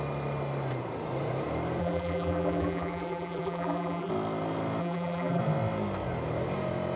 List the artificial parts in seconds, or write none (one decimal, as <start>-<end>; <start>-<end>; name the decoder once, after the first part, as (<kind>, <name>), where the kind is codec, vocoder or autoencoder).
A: 1.8-4.1 (vocoder, BigVGAN v2); 4.8-5.4